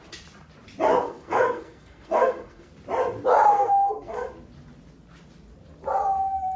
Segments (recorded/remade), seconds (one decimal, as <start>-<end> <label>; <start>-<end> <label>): 0.0-0.9 recorded; 0.9-2.7 remade; 2.7-3.5 recorded; 3.5-4.3 remade; 4.3-6.6 recorded